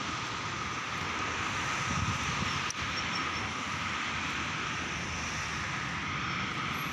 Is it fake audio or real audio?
real